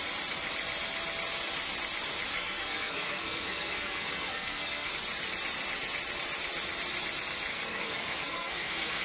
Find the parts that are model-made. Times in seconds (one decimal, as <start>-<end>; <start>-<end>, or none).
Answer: 2.3-4.9; 7.5-9.0